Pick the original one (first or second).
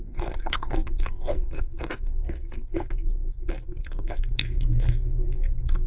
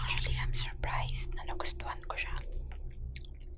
second